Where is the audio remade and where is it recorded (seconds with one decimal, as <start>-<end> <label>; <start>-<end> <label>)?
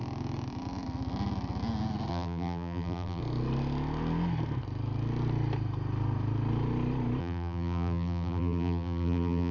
0.0-2.1 recorded; 2.1-3.2 remade; 3.2-7.2 recorded; 7.2-9.5 remade